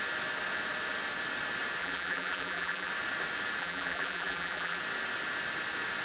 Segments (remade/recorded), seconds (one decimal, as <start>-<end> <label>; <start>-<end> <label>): 0.0-1.8 recorded; 1.8-2.9 remade; 2.9-3.6 recorded; 3.6-4.8 remade; 4.8-6.0 recorded